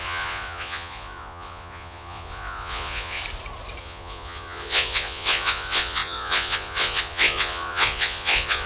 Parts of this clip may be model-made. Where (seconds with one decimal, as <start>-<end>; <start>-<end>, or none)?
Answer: 0.0-3.2; 3.8-8.7

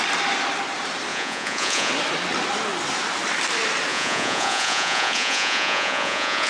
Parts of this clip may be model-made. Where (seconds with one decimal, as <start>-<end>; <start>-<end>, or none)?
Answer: 1.1-1.9; 3.9-6.5

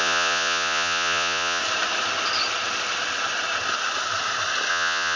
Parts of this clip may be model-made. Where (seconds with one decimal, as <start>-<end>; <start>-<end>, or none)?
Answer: 0.0-1.6; 4.7-5.2

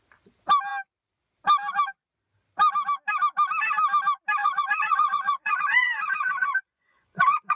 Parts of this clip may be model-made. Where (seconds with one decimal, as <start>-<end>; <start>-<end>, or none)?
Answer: 4.4-7.6

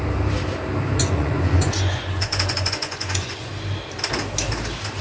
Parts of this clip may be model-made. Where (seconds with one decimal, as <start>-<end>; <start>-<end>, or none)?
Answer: 1.0-3.5